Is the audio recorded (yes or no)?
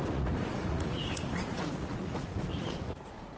no